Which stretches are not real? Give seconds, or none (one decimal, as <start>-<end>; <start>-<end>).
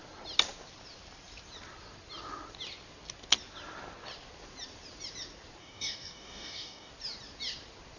5.6-6.9